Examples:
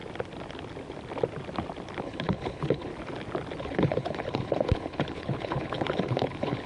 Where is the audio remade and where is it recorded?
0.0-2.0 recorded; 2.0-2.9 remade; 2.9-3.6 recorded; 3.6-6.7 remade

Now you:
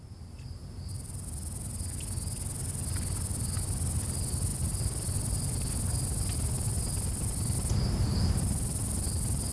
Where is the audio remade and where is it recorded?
0.0-9.5 recorded

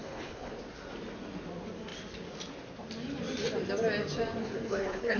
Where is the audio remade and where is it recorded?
0.0-0.5 remade; 0.5-4.4 recorded; 4.4-5.2 remade

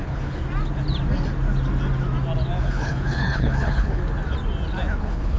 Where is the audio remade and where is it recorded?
0.0-0.4 remade; 0.4-2.6 recorded; 2.6-4.0 remade; 4.0-5.0 recorded; 5.0-5.4 remade

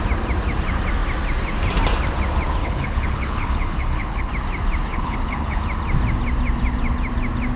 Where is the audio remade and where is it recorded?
0.0-2.6 recorded; 2.6-4.3 remade; 4.3-4.9 recorded; 4.9-5.6 remade; 5.6-7.6 recorded

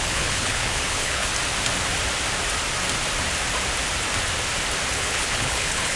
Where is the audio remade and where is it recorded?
0.0-1.3 remade; 1.3-4.9 recorded; 4.9-6.0 remade

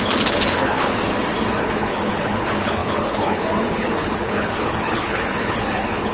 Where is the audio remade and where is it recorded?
0.0-1.0 remade; 1.0-1.6 recorded; 1.6-6.1 remade

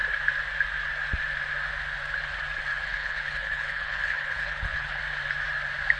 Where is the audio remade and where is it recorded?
0.0-2.7 recorded; 2.7-5.0 remade; 5.0-6.0 recorded